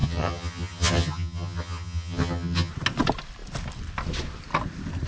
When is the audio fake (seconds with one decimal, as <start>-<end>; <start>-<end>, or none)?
0.0-2.7